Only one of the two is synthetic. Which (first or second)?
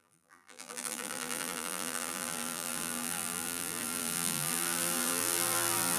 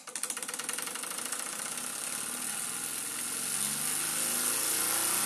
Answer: first